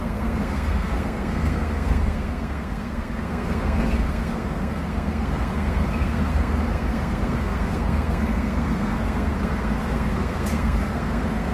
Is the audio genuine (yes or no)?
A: no